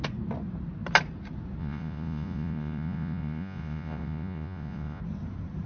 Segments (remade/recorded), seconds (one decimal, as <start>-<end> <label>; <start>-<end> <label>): 0.0-1.6 recorded; 1.6-5.0 remade; 5.0-5.7 recorded